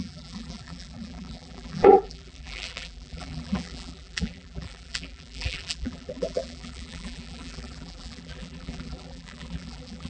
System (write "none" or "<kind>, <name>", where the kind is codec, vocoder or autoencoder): vocoder, BigVGAN v2